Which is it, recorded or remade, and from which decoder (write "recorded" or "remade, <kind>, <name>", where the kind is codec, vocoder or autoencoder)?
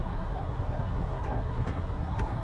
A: remade, codec, SNAC